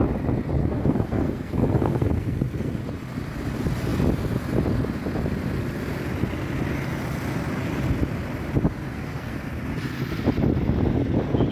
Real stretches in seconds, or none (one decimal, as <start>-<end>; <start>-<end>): 0.0-0.6; 2.8-8.9; 9.5-11.5